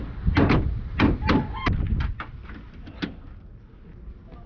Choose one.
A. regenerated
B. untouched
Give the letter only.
B